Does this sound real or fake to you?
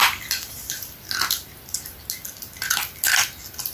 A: real